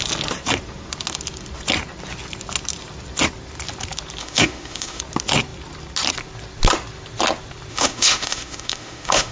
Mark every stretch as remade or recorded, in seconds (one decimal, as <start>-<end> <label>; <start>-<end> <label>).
0.0-4.2 recorded; 4.2-5.0 remade; 5.0-7.7 recorded; 7.7-9.3 remade